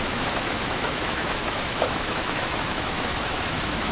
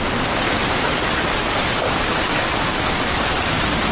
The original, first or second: second